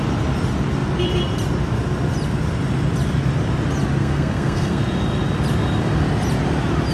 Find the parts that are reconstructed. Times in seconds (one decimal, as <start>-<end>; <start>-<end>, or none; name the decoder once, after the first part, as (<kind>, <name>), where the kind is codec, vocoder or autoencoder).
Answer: 4.0-4.8 (codec, SNAC)